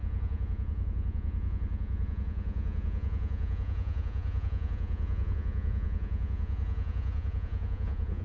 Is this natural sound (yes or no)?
no